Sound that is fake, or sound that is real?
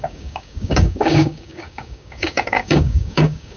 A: fake